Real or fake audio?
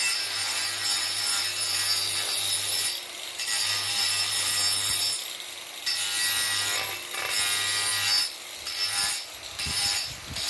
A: real